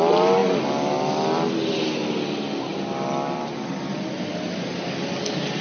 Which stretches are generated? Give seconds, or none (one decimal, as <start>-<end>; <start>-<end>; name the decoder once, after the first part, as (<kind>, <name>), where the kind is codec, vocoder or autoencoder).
none